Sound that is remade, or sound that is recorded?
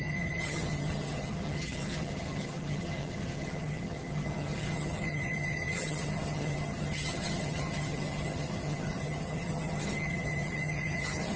remade